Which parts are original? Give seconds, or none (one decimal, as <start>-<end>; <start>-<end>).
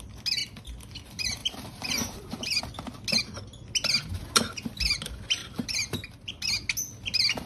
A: 0.0-1.4; 2.6-4.2; 4.7-5.4; 6.3-7.5